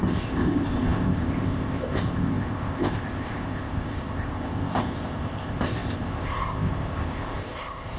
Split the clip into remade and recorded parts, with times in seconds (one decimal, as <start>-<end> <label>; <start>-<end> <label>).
0.0-8.0 remade

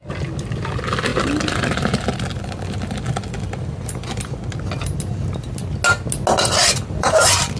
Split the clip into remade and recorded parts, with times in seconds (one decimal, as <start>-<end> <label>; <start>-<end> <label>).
0.0-1.1 recorded; 1.1-4.4 remade; 4.4-6.6 recorded; 6.6-7.6 remade

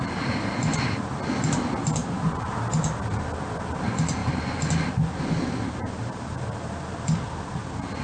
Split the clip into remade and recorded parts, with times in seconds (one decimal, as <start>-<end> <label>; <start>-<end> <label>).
0.0-2.0 recorded; 2.0-2.5 remade; 2.5-8.0 recorded

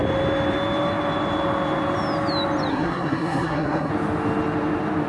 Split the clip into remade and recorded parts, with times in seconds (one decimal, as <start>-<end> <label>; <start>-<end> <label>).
0.0-2.7 recorded; 2.7-3.9 remade; 3.9-5.1 recorded

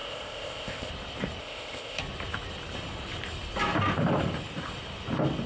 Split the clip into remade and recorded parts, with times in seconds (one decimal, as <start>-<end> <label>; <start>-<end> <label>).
0.0-0.9 remade; 0.9-1.4 recorded; 1.4-2.0 remade; 2.0-5.5 recorded

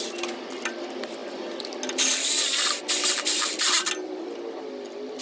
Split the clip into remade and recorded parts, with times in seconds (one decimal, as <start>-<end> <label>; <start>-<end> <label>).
0.0-5.2 recorded

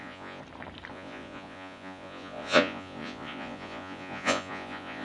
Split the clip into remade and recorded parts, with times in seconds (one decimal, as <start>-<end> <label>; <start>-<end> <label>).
0.0-0.4 remade; 0.4-0.9 recorded; 0.9-5.0 remade